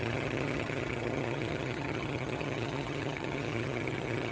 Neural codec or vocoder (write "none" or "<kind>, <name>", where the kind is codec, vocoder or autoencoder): vocoder, HiFi-GAN